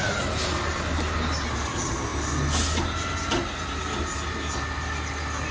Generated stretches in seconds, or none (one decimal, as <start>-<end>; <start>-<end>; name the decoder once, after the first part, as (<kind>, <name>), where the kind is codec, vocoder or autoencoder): none